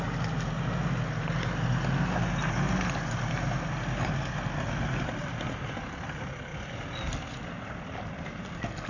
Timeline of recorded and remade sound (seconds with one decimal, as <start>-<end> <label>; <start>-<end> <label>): 0.0-6.5 recorded; 6.5-8.5 remade; 8.5-8.9 recorded